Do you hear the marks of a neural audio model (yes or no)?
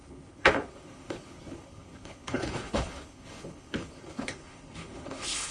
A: yes